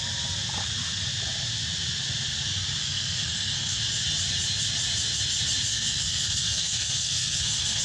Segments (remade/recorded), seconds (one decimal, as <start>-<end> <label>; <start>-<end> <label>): 0.0-2.8 recorded; 2.8-3.8 remade; 3.8-5.7 recorded; 5.7-7.8 remade

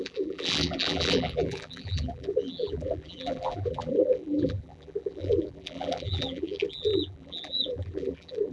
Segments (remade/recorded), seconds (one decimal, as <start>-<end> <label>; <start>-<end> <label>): 0.0-8.5 remade